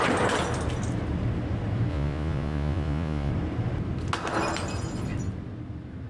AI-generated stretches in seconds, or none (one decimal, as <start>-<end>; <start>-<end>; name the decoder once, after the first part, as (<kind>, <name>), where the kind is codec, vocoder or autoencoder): 1.9-3.3 (vocoder, Vocos)